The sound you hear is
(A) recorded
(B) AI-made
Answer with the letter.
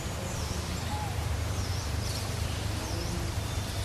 B